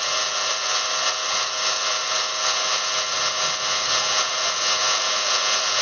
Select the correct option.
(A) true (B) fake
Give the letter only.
A